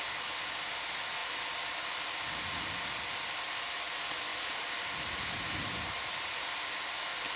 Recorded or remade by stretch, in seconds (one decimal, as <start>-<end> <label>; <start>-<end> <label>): 0.0-4.3 recorded; 4.3-6.7 remade; 6.7-7.4 recorded